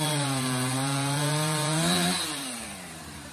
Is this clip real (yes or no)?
no